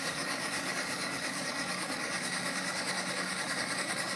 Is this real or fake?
fake